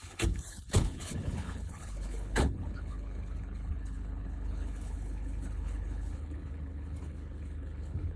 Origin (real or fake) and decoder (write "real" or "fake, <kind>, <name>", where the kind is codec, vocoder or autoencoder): fake, codec, HILCodec